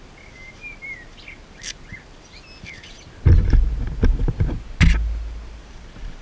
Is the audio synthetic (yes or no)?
no